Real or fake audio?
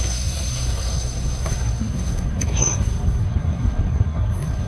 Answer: fake